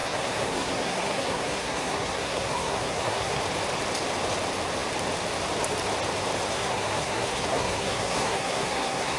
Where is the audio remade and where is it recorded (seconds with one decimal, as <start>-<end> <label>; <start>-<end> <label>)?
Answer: 0.0-3.4 remade; 3.4-6.5 recorded; 6.5-9.2 remade